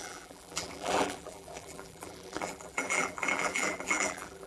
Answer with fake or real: fake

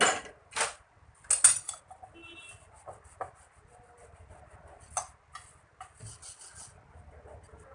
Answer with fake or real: real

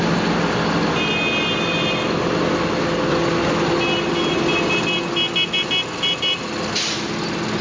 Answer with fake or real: real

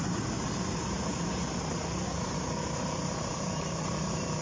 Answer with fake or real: fake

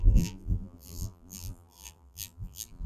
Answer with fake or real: fake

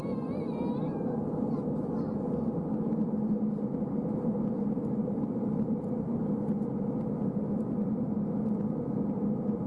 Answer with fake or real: real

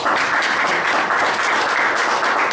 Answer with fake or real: real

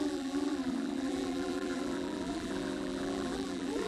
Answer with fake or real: fake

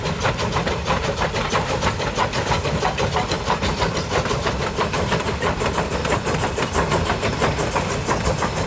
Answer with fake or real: fake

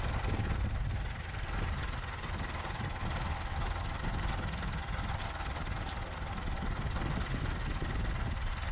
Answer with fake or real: real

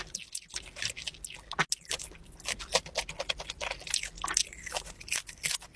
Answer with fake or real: real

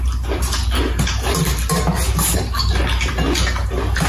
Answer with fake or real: real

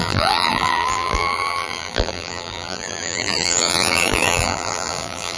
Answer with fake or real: fake